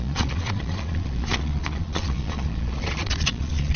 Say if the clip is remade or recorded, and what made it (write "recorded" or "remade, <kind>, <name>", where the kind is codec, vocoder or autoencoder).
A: remade, vocoder, Vocos